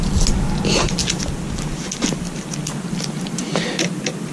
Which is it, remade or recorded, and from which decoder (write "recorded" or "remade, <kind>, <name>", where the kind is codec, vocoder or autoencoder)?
recorded